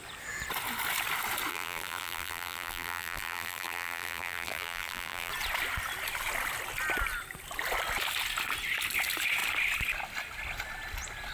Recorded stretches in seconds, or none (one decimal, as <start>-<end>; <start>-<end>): 0.0-1.5; 5.3-11.3